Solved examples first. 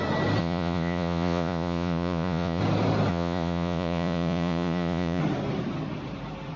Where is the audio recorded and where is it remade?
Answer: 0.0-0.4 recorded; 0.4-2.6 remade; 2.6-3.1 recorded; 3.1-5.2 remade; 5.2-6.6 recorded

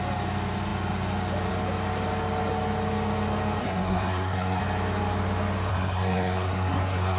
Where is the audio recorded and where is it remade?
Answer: 0.0-3.6 recorded; 3.6-4.6 remade; 4.6-5.7 recorded; 5.7-7.2 remade

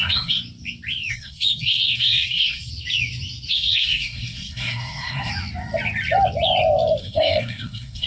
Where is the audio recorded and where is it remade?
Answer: 0.0-0.4 remade; 0.4-1.1 recorded; 1.1-2.7 remade; 2.7-3.5 recorded; 3.5-5.3 remade; 5.3-7.0 recorded; 7.0-8.1 remade

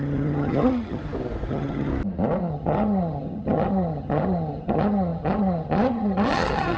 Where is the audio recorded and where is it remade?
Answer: 0.0-1.0 remade; 1.0-1.5 recorded; 1.5-1.9 remade; 1.9-2.5 recorded; 2.5-6.8 remade